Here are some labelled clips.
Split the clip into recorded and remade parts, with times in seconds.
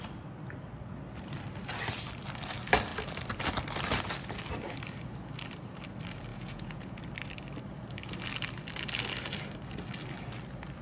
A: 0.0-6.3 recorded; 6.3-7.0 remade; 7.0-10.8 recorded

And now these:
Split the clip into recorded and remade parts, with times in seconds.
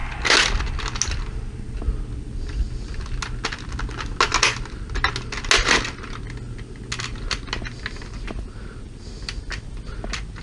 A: 0.0-10.4 recorded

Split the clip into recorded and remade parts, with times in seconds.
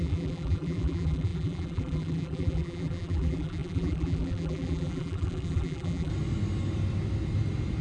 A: 0.0-6.1 remade; 6.1-7.8 recorded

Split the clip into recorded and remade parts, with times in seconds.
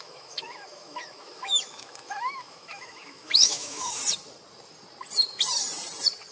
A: 0.0-4.0 remade; 4.0-6.3 recorded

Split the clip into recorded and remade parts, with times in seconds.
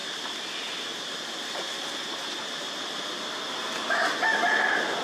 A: 0.0-5.0 recorded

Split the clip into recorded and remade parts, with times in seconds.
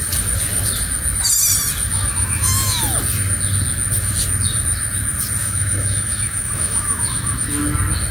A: 0.0-1.9 recorded; 1.9-2.8 remade; 2.8-5.4 recorded; 5.4-7.5 remade; 7.5-8.1 recorded